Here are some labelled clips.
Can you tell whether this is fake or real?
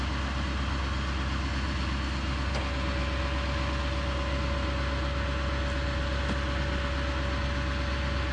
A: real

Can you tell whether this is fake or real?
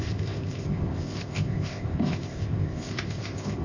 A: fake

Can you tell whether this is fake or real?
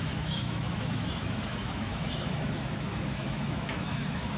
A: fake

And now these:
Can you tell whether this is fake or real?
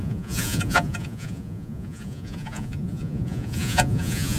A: fake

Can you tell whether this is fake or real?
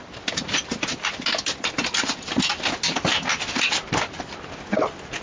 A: real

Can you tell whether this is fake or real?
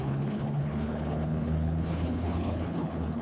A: fake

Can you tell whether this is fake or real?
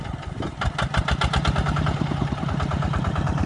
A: fake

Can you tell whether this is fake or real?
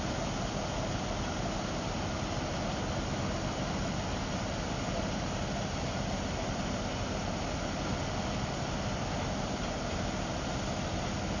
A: real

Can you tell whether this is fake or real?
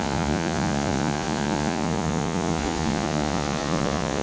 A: fake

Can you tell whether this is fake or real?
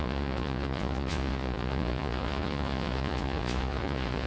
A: fake